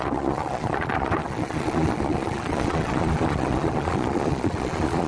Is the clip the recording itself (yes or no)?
no